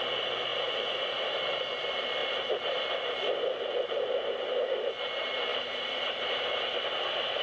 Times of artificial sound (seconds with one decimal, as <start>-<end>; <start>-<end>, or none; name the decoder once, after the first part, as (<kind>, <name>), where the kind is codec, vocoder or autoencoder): 0.5-1.6 (vocoder, BigVGAN v2); 2.2-2.8; 5.5-7.4